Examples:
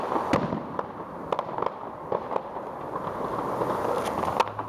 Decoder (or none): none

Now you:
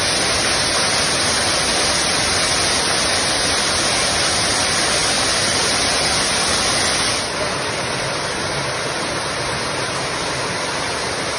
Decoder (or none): none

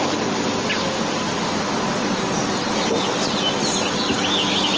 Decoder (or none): none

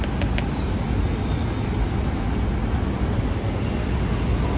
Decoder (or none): none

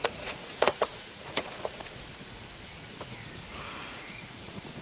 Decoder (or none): vocoder, Vocos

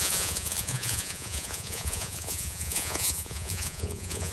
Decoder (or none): vocoder, Vocos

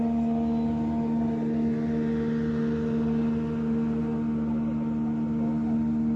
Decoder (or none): none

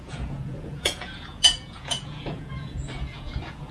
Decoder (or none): vocoder, Vocos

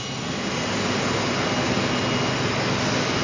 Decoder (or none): none